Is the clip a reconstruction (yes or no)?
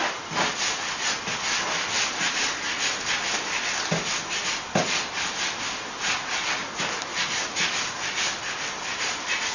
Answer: no